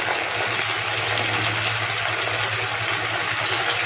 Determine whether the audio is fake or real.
real